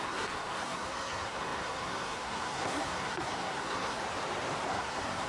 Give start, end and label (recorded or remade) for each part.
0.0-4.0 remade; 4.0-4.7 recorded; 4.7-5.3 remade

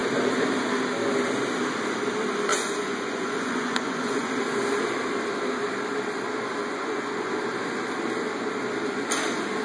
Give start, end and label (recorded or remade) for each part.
0.0-2.5 recorded; 2.5-4.3 remade; 4.3-6.6 recorded; 6.6-7.3 remade; 7.3-9.6 recorded

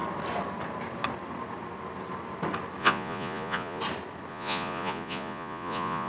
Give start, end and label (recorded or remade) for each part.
0.0-2.8 recorded; 2.8-3.8 remade; 3.8-4.3 recorded; 4.3-6.1 remade

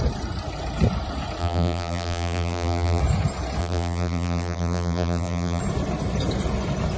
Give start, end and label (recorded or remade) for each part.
0.0-1.4 recorded; 1.4-3.0 remade; 3.0-3.6 recorded; 3.6-5.6 remade; 5.6-7.0 recorded